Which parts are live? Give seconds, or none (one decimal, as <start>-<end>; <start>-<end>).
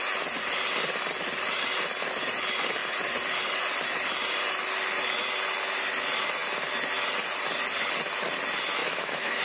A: 0.0-8.8